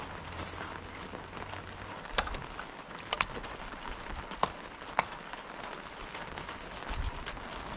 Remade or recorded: recorded